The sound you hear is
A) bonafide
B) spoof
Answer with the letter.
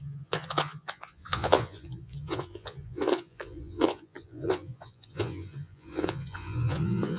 B